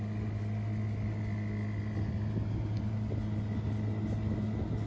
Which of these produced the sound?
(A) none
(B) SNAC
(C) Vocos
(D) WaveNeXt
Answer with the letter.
A